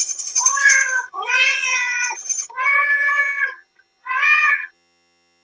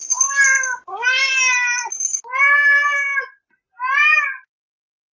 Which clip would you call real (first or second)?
second